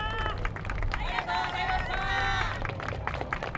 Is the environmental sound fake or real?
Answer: real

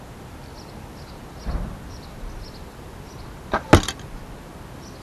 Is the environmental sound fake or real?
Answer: real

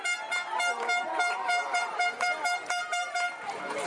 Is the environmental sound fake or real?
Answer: fake